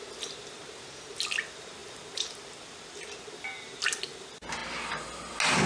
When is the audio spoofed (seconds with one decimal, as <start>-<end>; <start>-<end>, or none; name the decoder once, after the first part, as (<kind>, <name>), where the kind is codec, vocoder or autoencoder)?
none